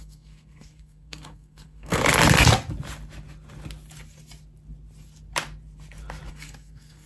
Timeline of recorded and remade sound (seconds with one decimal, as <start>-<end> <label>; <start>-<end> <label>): 0.0-2.0 remade; 2.0-6.3 recorded; 6.3-7.1 remade